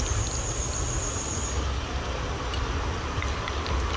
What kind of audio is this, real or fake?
real